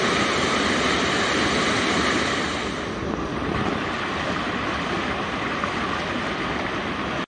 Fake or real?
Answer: real